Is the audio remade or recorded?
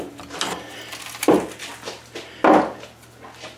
recorded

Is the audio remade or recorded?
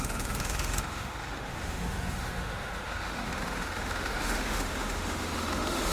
remade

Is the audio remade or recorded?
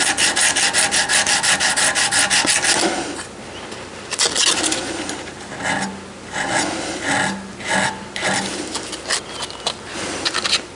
recorded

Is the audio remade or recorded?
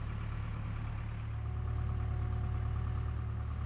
recorded